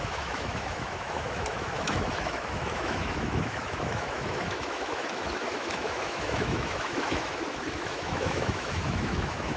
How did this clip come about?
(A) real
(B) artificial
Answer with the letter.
B